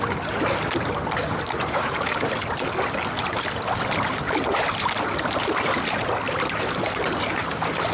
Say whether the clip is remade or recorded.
recorded